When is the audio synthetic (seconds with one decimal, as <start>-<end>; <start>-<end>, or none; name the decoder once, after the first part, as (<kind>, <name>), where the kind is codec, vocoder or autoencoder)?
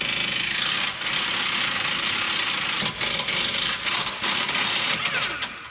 none